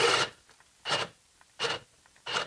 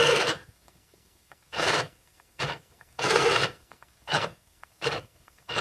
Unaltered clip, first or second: first